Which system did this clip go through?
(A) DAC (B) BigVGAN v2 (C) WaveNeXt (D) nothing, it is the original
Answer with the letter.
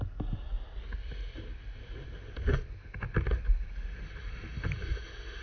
D